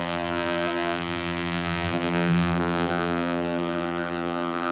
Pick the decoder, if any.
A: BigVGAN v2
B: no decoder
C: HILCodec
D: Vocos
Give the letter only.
A